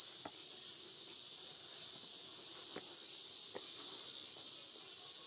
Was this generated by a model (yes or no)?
no